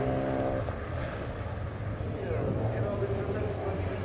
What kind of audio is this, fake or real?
real